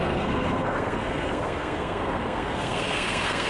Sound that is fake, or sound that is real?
fake